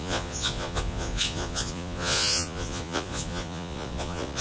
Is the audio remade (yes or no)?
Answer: yes